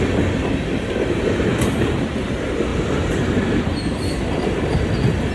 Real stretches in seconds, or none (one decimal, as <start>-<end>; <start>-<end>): 0.0-5.3